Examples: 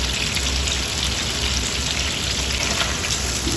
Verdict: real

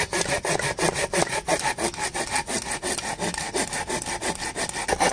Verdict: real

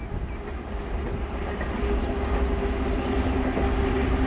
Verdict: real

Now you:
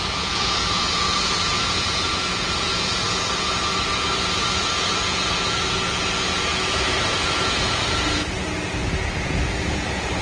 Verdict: fake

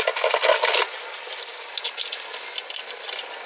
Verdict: real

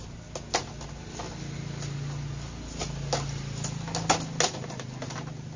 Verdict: real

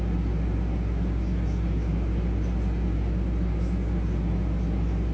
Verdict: real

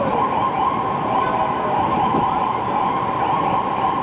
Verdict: real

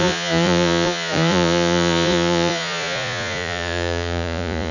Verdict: fake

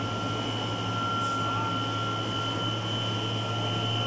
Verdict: real